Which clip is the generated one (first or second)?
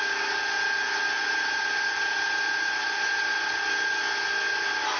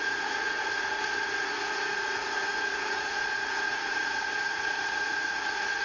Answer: second